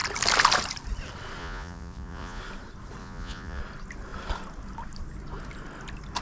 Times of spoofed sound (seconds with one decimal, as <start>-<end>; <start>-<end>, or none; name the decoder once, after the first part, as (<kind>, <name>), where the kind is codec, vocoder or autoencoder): 1.4-2.4 (vocoder, Vocos); 3.0-3.6

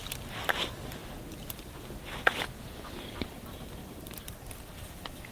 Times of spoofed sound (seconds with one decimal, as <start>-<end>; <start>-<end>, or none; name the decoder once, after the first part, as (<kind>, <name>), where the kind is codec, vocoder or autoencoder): 3.8-4.4 (vocoder, BigVGAN v2)

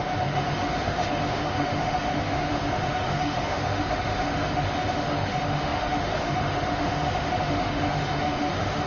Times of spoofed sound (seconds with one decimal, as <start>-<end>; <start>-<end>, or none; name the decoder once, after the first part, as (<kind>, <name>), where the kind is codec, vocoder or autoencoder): 0.0-8.9 (autoencoder, DAC-VAE)

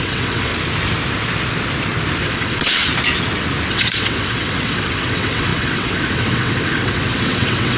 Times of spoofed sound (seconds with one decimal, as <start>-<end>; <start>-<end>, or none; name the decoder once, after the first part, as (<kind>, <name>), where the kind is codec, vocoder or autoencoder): 0.0-0.5 (vocoder, WaveNeXt); 2.2-2.9; 3.7-7.8